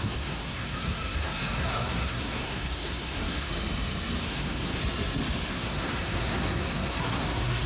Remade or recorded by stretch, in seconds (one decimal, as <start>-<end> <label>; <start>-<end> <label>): 0.0-3.5 remade; 3.5-4.2 recorded; 4.2-4.8 remade; 4.8-5.5 recorded; 5.5-7.7 remade